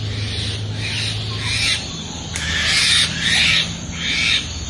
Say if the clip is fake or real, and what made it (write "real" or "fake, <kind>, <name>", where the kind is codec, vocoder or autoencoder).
real